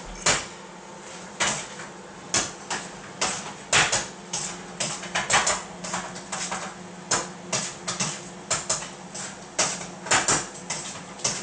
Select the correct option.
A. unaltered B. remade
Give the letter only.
A